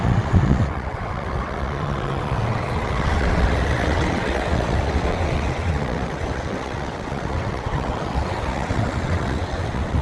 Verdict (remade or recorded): remade